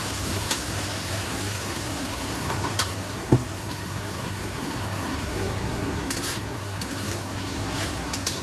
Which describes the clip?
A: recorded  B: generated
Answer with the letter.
B